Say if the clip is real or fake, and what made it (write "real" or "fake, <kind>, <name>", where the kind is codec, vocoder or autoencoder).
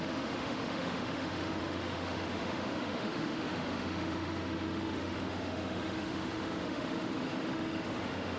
fake, autoencoder, DAC-VAE